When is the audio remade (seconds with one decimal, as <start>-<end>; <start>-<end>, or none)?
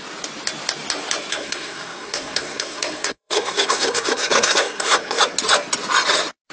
1.3-5.2